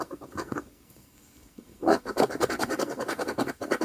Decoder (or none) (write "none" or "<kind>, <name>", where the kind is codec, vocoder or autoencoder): codec, SNAC